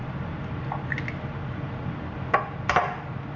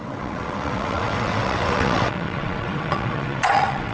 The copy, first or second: second